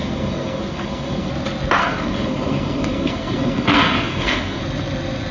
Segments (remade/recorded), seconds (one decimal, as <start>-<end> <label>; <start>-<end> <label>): 0.0-1.3 remade; 1.3-1.8 recorded; 1.8-4.6 remade; 4.6-5.3 recorded